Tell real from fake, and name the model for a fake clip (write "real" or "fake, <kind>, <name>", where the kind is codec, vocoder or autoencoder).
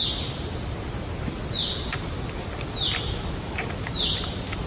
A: real